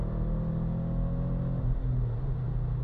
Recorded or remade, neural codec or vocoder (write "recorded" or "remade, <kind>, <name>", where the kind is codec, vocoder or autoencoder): recorded